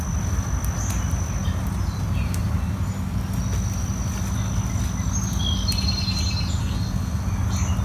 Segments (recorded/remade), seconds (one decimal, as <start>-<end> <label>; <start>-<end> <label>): 0.0-6.6 recorded; 6.6-7.2 remade; 7.2-7.8 recorded